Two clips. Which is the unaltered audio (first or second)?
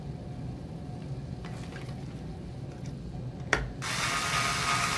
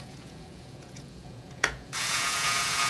first